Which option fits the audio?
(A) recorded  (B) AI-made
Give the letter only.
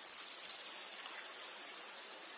B